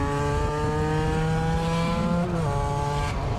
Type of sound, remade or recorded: recorded